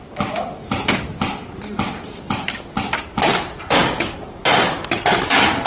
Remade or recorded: recorded